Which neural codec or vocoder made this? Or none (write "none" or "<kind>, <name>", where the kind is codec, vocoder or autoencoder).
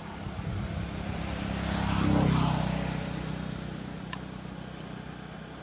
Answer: none